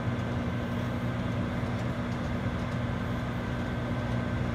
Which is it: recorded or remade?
recorded